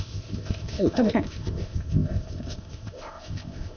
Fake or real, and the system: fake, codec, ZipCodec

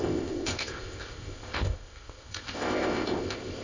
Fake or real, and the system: fake, codec, ZipCodec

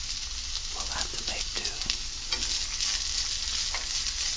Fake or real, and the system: real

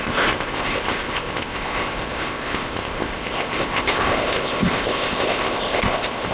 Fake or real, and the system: fake, codec, ZipCodec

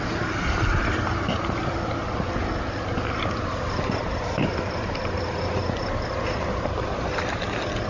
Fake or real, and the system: real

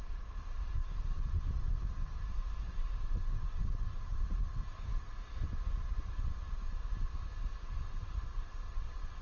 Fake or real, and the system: real